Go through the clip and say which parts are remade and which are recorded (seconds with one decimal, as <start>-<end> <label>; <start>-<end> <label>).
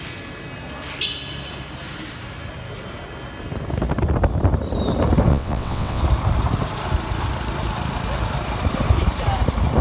0.0-5.3 recorded; 5.3-6.0 remade; 6.0-9.8 recorded